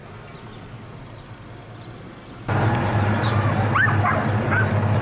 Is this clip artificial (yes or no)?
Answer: no